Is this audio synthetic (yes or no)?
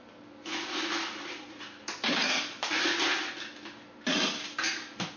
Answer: no